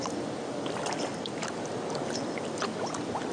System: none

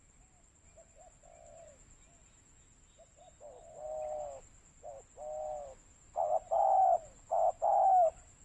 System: none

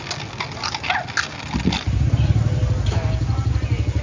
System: none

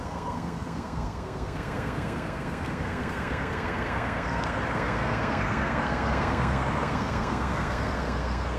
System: codec, SNAC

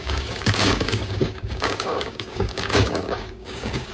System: codec, DAC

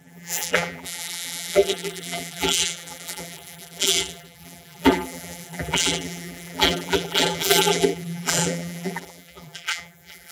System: vocoder, BigVGAN v2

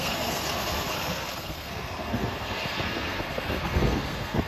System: codec, SNAC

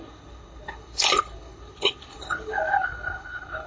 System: codec, HILCodec